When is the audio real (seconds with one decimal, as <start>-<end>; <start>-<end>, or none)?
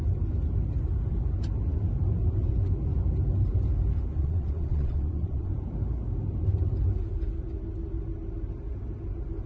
0.0-4.2; 5.5-9.5